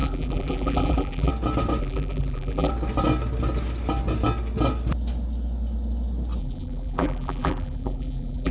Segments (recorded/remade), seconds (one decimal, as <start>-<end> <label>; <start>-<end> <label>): 0.0-1.3 remade; 1.3-1.8 recorded; 1.8-2.7 remade; 2.7-6.4 recorded; 6.4-8.5 remade